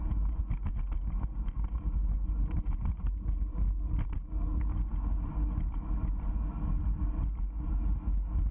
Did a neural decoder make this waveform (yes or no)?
no